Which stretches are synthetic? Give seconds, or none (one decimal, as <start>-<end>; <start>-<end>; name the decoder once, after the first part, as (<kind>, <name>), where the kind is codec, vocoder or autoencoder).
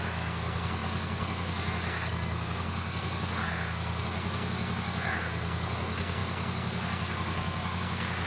0.0-8.3 (codec, SNAC)